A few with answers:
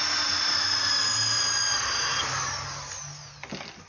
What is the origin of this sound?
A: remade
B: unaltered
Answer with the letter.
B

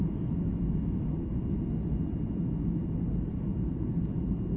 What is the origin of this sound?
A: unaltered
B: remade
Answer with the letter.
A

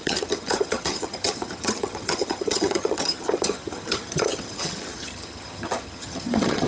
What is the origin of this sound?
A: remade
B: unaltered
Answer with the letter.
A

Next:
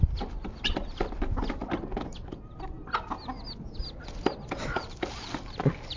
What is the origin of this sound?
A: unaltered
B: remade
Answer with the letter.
A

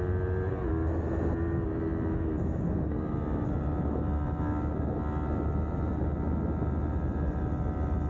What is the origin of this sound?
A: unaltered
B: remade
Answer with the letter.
A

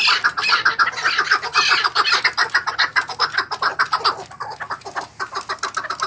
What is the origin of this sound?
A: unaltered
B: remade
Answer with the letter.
A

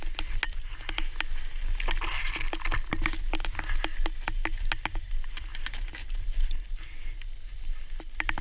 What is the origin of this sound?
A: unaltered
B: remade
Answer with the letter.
A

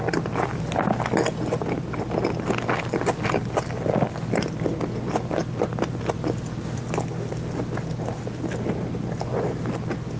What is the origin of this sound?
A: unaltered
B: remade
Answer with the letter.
A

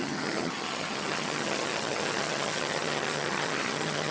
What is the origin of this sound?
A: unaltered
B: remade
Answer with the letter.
B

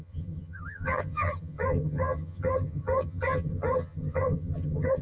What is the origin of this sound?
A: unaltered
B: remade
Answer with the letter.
B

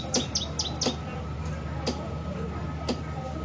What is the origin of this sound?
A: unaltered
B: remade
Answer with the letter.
A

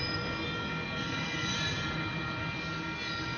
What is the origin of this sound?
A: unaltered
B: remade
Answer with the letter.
A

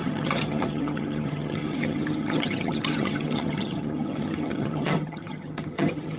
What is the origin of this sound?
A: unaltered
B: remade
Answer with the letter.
B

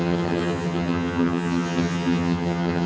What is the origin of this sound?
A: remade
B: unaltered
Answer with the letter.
A